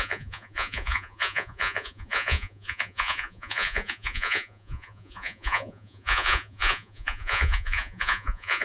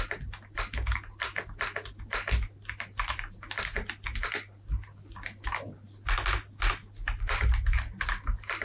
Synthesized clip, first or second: first